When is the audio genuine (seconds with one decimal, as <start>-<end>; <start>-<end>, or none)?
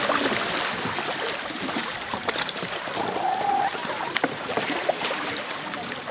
0.0-1.8; 2.9-3.8